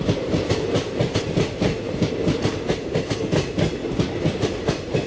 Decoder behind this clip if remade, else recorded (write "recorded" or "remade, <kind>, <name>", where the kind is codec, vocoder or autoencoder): recorded